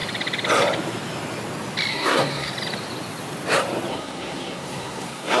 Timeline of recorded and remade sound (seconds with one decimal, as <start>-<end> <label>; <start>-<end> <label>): 0.0-1.9 recorded; 1.9-2.5 remade; 2.5-3.9 recorded; 3.9-5.4 remade